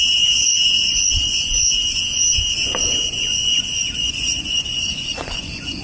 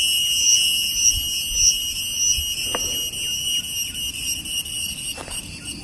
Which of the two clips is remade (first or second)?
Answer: first